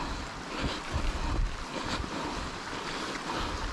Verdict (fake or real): real